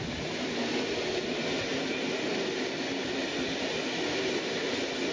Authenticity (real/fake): real